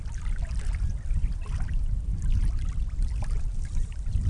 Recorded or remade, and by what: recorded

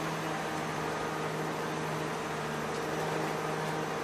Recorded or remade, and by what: recorded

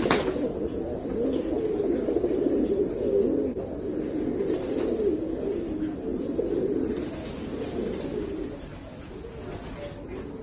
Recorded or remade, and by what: recorded